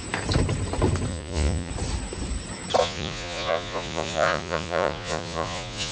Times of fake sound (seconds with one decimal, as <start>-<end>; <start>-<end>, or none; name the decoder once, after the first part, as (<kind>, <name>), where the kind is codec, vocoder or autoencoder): 1.1-1.7 (vocoder, Vocos); 2.8-5.9